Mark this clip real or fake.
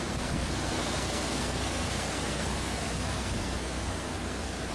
fake